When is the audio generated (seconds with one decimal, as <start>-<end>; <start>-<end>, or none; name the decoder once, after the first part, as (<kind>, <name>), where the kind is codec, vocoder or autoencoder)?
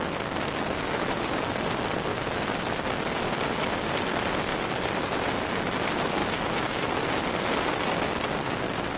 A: 6.2-6.9 (autoencoder, DAC-VAE)